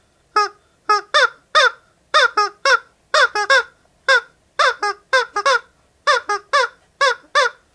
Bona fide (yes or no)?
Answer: yes